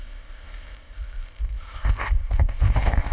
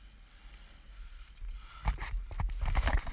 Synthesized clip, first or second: first